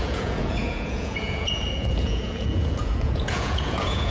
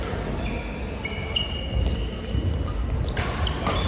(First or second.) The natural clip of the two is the second